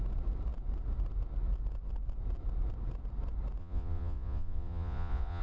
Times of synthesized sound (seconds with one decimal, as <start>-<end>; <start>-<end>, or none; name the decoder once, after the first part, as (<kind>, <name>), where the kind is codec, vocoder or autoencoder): 3.6-5.4 (vocoder, Vocos)